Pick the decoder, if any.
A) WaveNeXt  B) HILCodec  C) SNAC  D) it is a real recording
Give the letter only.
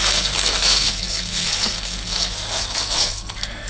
C